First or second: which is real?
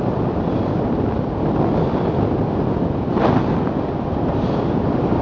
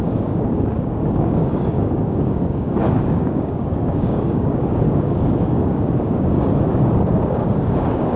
first